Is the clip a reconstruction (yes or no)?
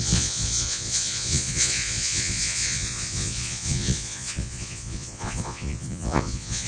yes